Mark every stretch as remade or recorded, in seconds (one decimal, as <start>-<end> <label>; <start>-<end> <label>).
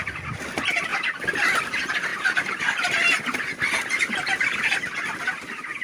0.0-2.1 remade; 2.1-5.2 recorded; 5.2-5.8 remade